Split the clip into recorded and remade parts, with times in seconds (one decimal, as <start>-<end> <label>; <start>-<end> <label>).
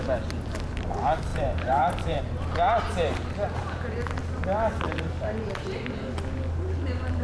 0.0-1.3 recorded; 1.3-2.2 remade; 2.2-7.2 recorded